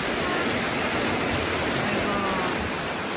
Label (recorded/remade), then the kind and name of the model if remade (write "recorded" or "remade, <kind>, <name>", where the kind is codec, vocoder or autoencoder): recorded